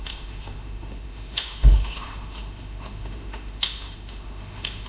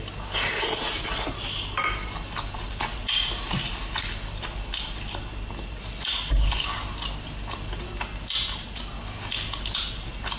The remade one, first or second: first